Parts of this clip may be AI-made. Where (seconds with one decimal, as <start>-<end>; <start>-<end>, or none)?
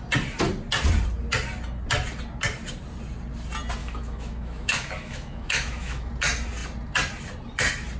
3.8-6.1